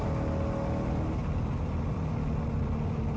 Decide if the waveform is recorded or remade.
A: recorded